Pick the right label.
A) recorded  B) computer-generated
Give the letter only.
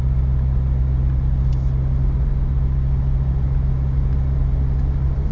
A